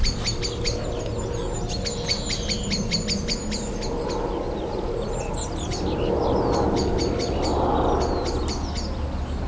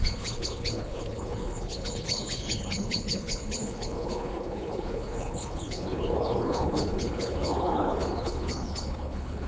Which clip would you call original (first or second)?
first